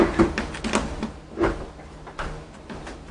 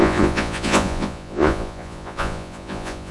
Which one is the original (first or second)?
first